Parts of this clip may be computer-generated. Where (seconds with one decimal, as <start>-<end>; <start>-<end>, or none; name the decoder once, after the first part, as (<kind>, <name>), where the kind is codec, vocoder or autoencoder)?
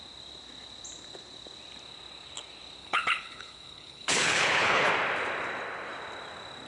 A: 2.8-4.9 (codec, HILCodec)